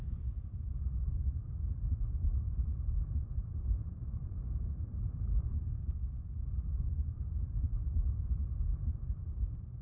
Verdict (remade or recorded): remade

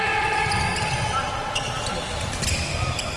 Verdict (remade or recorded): recorded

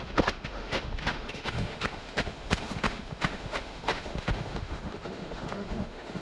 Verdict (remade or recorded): remade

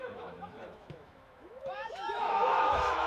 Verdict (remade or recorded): remade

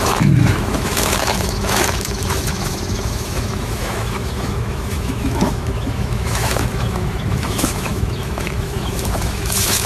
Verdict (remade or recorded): remade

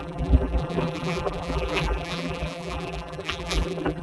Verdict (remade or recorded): remade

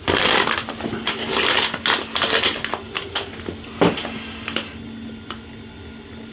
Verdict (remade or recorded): recorded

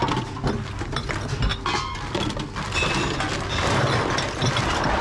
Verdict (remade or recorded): recorded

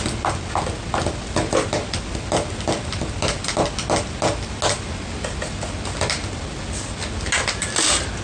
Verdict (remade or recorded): recorded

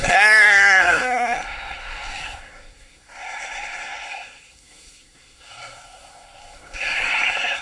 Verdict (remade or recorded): remade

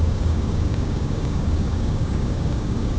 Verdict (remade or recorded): remade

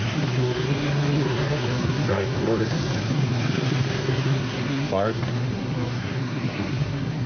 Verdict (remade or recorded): remade